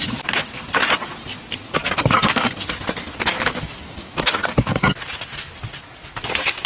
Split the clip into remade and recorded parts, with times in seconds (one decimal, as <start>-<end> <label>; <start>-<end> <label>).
0.0-3.3 recorded; 3.3-3.8 remade; 3.8-6.7 recorded